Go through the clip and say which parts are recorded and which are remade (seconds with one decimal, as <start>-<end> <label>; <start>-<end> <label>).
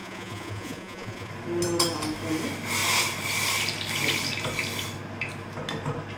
0.0-1.3 remade; 1.3-6.2 recorded